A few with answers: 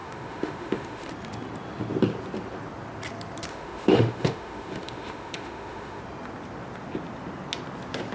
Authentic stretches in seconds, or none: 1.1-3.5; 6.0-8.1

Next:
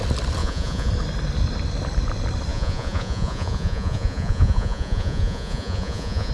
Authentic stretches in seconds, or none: 0.0-0.4; 0.9-2.5

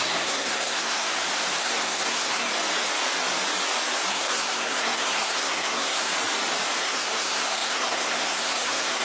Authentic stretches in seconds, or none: 1.1-1.6; 2.5-4.1; 6.1-6.8

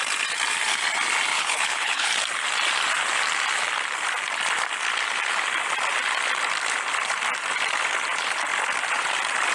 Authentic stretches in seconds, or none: 0.0-1.3; 2.1-9.5